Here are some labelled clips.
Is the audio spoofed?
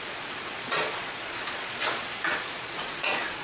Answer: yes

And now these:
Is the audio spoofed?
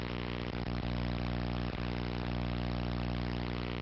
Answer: no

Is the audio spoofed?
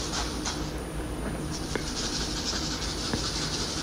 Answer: no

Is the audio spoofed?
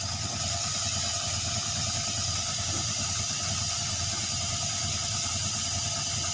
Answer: no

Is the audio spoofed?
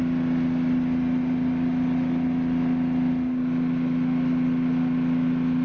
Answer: no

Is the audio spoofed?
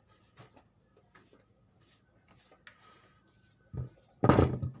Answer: no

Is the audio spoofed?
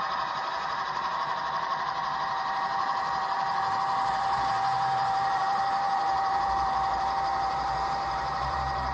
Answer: yes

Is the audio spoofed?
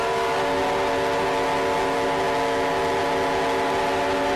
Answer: no